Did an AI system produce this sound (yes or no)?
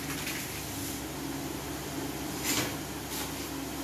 no